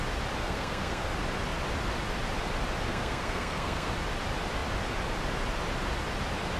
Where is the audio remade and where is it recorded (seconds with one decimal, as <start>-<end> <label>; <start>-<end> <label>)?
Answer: 0.0-0.4 recorded; 0.4-1.1 remade; 1.1-2.9 recorded; 2.9-3.9 remade; 3.9-6.6 recorded